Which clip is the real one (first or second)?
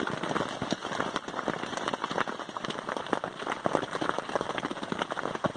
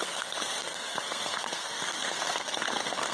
first